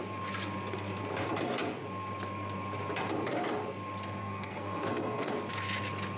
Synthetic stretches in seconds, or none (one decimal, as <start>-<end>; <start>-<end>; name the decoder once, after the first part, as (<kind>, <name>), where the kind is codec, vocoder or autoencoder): 4.2-5.3 (codec, SNAC)